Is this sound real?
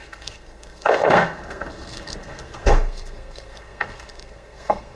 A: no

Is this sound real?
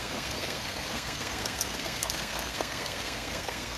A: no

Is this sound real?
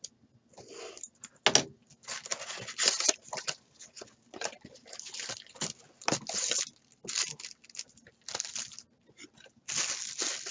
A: yes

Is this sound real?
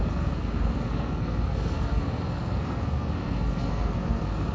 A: no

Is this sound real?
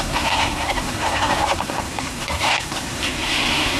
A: no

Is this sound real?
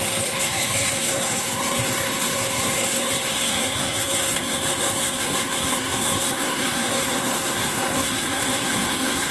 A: no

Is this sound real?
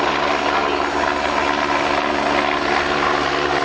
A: yes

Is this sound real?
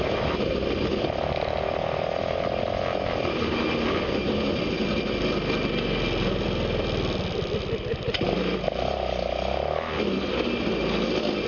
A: yes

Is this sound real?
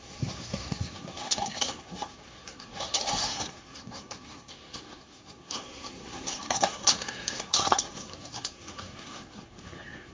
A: no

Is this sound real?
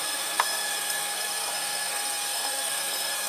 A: no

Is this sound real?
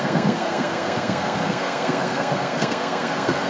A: no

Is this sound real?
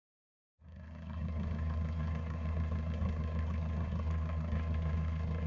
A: no